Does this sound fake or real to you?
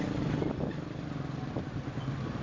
real